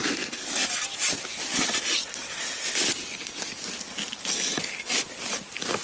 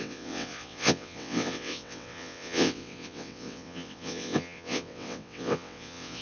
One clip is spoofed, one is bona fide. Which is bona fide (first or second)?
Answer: first